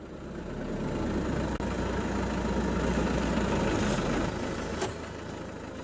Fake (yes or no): no